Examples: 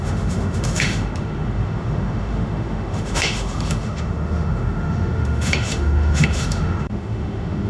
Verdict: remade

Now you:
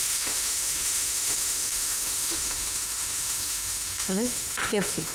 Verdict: remade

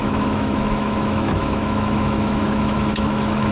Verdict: remade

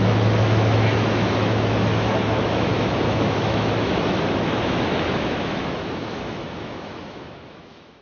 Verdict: remade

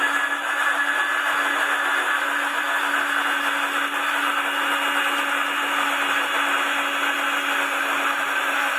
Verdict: recorded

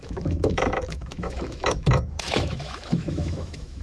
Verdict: remade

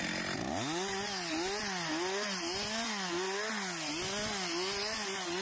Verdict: recorded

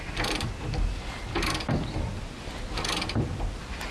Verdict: recorded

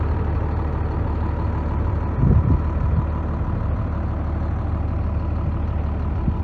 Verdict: recorded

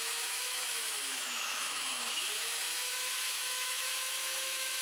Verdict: remade